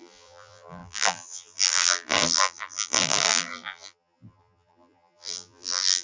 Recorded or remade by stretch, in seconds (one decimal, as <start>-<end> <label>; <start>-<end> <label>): 0.0-6.0 remade